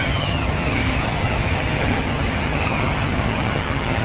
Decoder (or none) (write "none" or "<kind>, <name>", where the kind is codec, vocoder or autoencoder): vocoder, HiFi-GAN